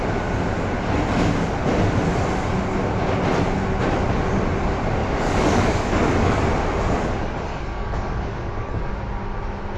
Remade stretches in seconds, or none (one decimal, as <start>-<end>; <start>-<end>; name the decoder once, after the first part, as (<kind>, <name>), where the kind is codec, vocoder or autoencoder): 5.0-6.4 (codec, DAC); 7.5-8.9